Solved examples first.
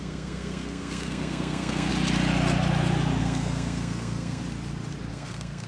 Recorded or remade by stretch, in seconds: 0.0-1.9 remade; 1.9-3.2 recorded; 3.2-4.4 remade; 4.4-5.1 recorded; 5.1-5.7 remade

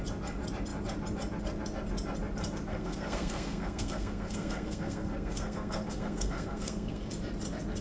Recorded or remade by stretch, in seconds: 0.0-2.7 recorded; 2.7-7.1 remade; 7.1-7.8 recorded

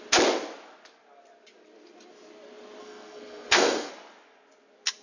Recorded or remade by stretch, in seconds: 0.0-2.8 recorded; 2.8-3.9 remade; 3.9-5.0 recorded

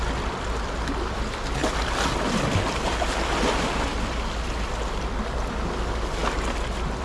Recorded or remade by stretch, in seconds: 0.0-7.0 recorded

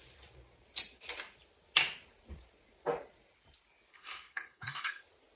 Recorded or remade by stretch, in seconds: 0.0-3.9 recorded; 3.9-5.0 remade; 5.0-5.4 recorded

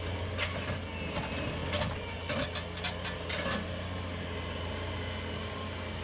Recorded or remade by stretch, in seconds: 0.0-6.0 recorded